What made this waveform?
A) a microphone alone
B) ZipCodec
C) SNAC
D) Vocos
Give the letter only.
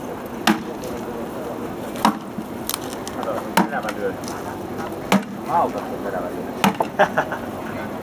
A